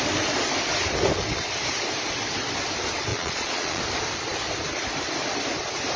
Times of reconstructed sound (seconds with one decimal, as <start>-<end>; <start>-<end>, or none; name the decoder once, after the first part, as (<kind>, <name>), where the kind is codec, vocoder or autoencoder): 3.1-3.8 (vocoder, Vocos)